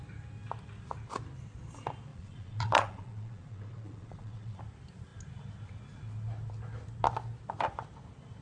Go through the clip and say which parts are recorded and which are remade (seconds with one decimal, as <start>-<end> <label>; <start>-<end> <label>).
0.0-2.1 recorded; 2.1-4.6 remade; 4.6-8.4 recorded